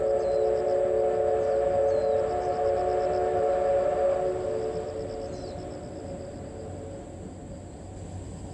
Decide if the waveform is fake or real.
real